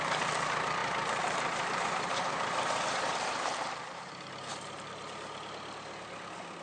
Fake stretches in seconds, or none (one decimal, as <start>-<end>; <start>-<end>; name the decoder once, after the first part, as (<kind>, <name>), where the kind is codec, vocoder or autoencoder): 0.8-4.8 (vocoder, BigVGAN v2)